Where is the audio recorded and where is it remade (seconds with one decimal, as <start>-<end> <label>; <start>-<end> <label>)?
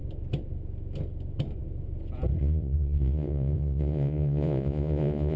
0.0-2.4 recorded; 2.4-5.4 remade